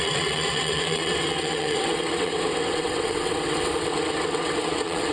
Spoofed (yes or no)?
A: yes